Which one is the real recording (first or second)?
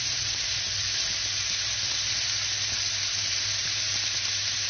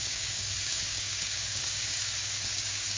first